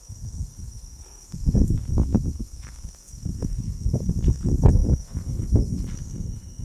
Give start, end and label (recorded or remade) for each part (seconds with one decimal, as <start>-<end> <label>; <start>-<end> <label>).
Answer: 0.0-6.6 remade